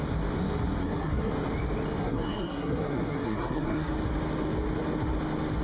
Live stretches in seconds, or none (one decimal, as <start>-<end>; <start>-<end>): 0.0-0.8; 1.3-2.0; 3.9-5.6